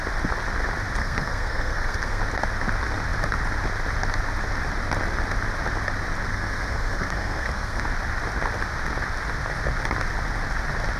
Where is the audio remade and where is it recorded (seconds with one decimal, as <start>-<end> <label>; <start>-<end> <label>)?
0.0-1.0 recorded; 1.0-2.2 remade; 2.2-6.3 recorded; 6.3-7.8 remade; 7.8-11.0 recorded